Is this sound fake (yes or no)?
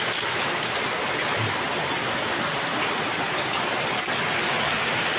no